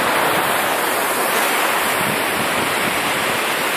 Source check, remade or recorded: remade